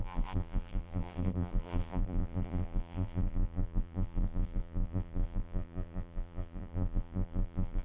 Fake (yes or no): yes